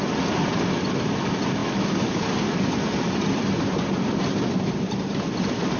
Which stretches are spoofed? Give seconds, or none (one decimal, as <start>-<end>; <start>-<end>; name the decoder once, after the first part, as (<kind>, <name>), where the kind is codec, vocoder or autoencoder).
none